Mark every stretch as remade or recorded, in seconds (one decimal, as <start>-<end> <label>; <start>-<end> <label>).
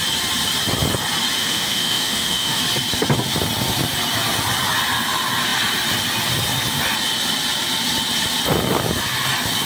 0.0-1.4 recorded; 1.4-2.6 remade; 2.6-9.6 recorded